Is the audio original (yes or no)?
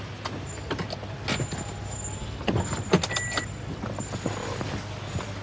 yes